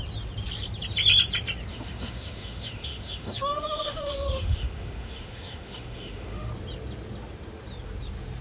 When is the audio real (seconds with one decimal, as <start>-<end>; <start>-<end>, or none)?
0.0-1.7; 6.5-8.4